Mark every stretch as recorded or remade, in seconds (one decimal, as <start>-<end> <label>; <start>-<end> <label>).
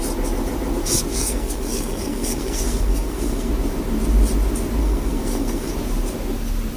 0.0-1.1 recorded; 1.1-3.5 remade; 3.5-4.8 recorded; 4.8-5.7 remade; 5.7-6.8 recorded